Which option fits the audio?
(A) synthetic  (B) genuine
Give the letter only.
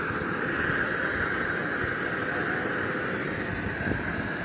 B